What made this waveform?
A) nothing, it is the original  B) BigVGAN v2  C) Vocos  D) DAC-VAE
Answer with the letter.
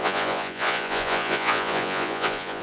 C